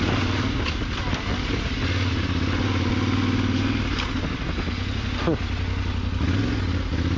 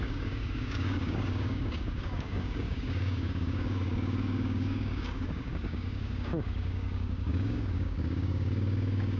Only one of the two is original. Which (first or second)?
first